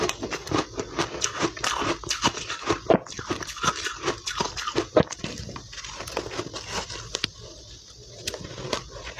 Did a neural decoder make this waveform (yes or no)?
no